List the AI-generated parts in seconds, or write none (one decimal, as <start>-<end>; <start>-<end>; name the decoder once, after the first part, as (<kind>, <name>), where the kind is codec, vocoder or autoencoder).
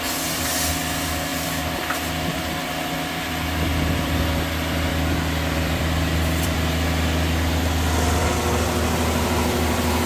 1.3-1.9 (vocoder, BigVGAN v2); 3.7-8.2